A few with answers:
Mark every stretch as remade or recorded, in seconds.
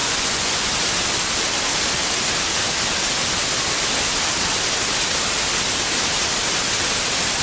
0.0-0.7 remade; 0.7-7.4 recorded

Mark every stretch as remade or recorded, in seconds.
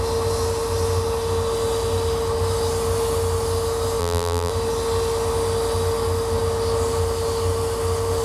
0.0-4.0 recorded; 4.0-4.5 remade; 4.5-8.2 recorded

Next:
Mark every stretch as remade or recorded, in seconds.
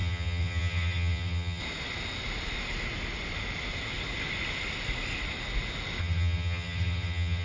0.0-1.6 remade; 1.6-6.0 recorded; 6.0-7.4 remade